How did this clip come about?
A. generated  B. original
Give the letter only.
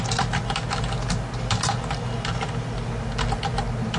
B